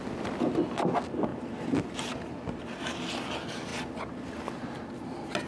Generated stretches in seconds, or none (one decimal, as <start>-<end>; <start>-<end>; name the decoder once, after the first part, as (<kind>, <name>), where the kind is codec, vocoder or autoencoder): 1.3-2.3 (vocoder, BigVGAN v2)